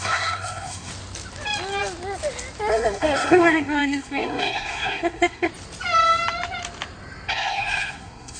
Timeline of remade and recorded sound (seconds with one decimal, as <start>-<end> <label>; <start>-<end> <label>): 0.0-0.9 remade; 0.9-2.7 recorded; 2.7-5.5 remade; 5.5-7.3 recorded; 7.3-8.4 remade